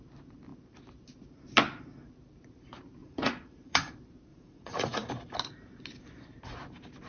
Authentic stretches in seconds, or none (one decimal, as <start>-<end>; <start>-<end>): 0.0-3.0; 3.9-4.3; 5.1-7.1

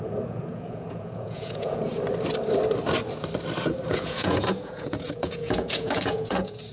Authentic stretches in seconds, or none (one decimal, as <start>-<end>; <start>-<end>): 1.9-3.9